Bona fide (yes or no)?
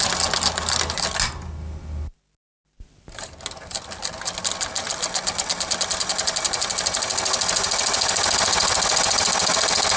yes